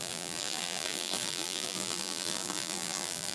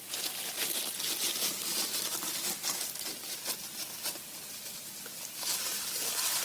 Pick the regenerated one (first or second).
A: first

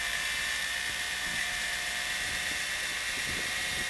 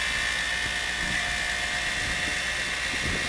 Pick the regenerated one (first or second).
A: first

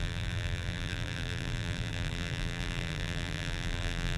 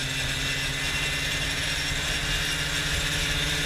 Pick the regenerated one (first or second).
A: first